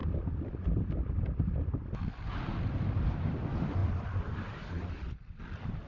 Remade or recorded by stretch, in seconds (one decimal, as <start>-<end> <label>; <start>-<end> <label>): 0.0-5.9 recorded